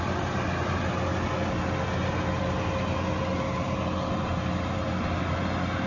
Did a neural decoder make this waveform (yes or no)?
no